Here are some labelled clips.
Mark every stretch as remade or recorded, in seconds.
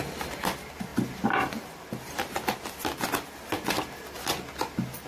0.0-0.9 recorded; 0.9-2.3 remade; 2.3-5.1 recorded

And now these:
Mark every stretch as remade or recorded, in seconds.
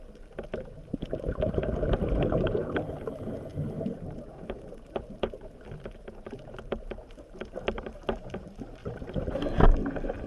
0.0-0.5 recorded; 0.5-2.9 remade; 2.9-3.5 recorded; 3.5-8.3 remade; 8.3-8.8 recorded; 8.8-9.4 remade; 9.4-10.3 recorded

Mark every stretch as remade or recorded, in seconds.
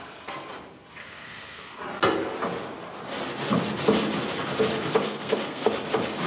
0.0-1.0 recorded; 1.0-1.8 remade; 1.8-5.0 recorded; 5.0-5.7 remade; 5.7-6.3 recorded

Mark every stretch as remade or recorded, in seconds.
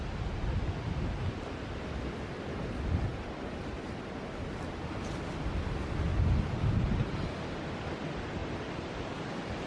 0.0-8.4 recorded; 8.4-9.1 remade; 9.1-9.7 recorded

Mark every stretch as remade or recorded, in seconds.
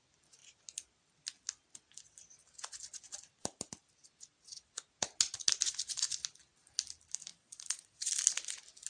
0.0-7.3 recorded; 7.3-8.1 remade; 8.1-8.9 recorded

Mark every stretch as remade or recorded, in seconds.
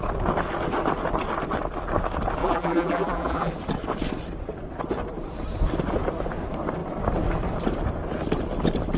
0.0-2.4 recorded; 2.4-3.5 remade; 3.5-9.0 recorded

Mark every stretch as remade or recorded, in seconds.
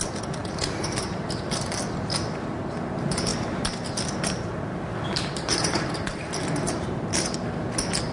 0.0-0.4 recorded; 0.4-2.6 remade; 2.6-8.1 recorded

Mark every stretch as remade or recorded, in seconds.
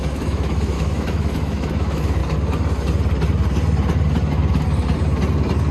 0.0-2.2 remade; 2.2-5.7 recorded